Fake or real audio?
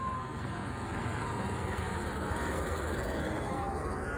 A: fake